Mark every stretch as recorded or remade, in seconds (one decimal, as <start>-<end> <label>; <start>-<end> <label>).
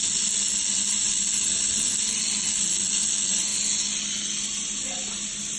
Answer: 0.0-5.6 recorded